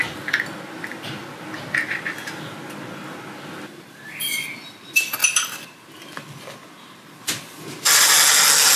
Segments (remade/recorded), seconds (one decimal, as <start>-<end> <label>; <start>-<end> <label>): 0.0-8.8 recorded